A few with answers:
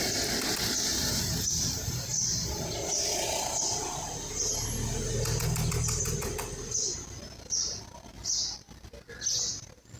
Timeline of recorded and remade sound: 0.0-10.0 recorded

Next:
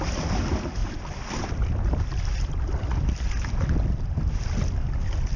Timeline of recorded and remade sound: 0.0-5.4 recorded

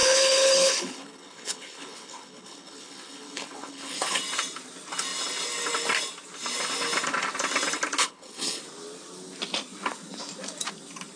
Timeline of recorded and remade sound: 0.0-4.2 remade; 4.2-8.0 recorded; 8.0-8.6 remade; 8.6-11.2 recorded

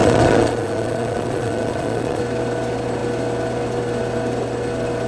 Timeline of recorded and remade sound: 0.0-2.2 remade; 2.2-5.1 recorded